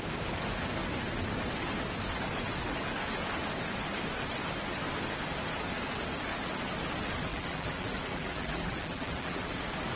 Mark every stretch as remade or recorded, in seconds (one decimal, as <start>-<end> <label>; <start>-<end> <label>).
0.0-7.3 recorded; 7.3-9.5 remade; 9.5-10.0 recorded